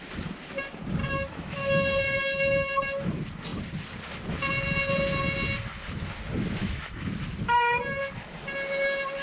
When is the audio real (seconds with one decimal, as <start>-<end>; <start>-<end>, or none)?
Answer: 0.0-1.0; 3.1-6.6; 7.1-9.2